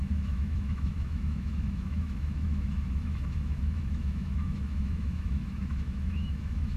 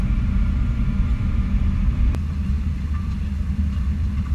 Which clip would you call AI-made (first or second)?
first